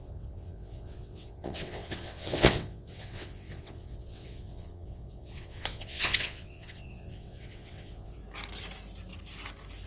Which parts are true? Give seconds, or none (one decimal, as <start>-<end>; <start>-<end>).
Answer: 8.2-9.9